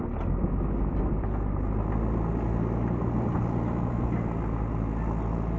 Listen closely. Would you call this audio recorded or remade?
recorded